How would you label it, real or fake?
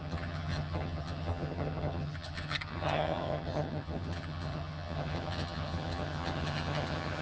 fake